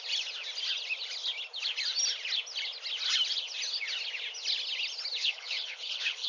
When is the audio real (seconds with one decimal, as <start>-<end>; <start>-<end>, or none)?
0.0-5.2